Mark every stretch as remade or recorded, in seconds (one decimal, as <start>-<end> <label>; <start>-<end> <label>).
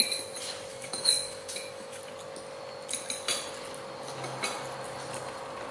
0.0-0.7 recorded; 0.7-2.0 remade; 2.0-5.7 recorded